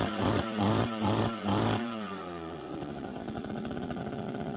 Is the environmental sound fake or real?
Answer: fake